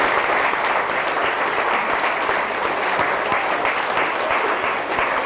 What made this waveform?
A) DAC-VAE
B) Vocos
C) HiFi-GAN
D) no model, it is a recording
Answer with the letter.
D